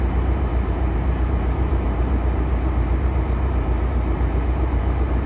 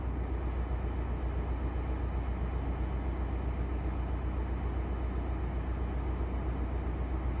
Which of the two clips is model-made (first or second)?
first